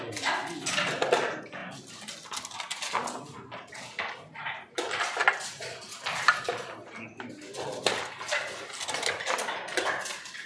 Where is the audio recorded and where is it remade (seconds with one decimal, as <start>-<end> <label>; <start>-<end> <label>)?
0.0-10.5 recorded